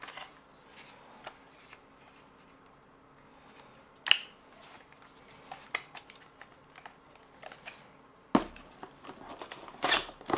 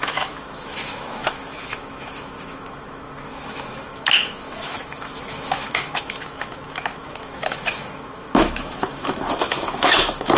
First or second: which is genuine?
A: first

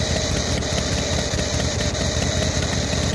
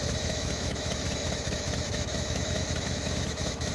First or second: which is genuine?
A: first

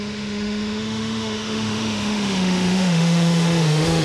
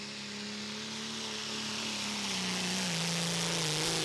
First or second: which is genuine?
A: second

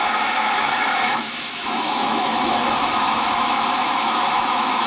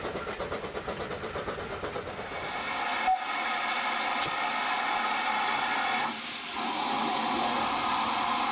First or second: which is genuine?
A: second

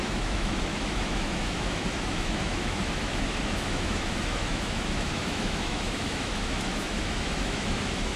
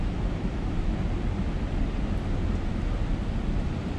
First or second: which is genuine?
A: second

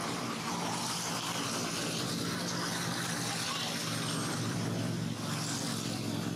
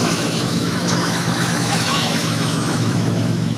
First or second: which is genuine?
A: first